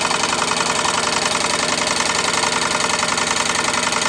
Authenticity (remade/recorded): recorded